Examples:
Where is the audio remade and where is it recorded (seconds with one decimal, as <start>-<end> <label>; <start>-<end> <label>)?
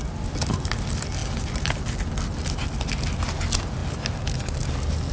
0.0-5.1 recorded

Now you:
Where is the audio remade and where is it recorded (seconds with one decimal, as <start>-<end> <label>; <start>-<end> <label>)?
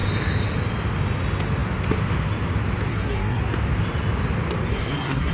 0.0-2.9 recorded; 2.9-3.4 remade; 3.4-4.7 recorded; 4.7-5.3 remade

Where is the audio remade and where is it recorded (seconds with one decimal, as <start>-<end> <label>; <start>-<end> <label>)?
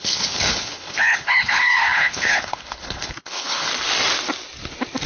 0.0-3.7 remade; 3.7-5.1 recorded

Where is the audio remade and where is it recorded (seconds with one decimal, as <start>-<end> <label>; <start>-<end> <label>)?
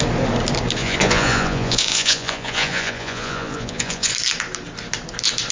0.0-0.8 recorded; 0.8-4.1 remade; 4.1-5.5 recorded